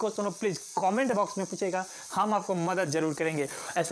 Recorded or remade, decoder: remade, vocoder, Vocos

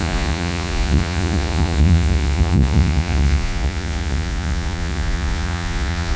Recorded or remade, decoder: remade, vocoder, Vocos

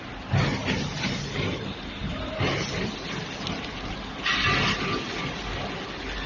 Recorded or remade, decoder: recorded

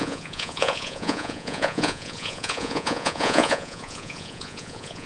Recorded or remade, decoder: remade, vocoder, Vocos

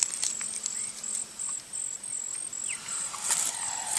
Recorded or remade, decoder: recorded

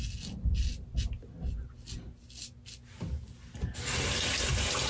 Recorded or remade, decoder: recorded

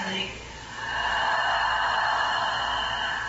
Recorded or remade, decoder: recorded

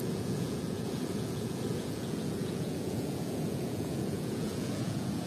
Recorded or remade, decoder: remade, vocoder, Vocos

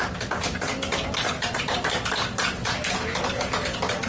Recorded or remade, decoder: recorded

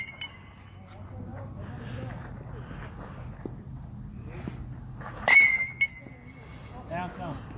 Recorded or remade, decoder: recorded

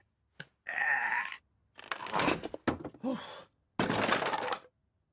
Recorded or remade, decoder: recorded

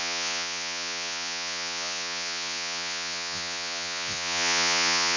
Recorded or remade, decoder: remade, vocoder, Vocos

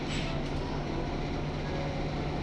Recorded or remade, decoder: recorded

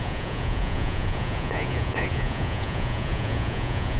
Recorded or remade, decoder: remade, vocoder, Vocos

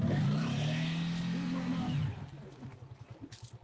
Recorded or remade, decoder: recorded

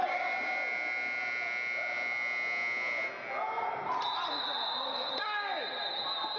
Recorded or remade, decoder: recorded